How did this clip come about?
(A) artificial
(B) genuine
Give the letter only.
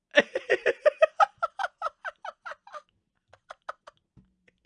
B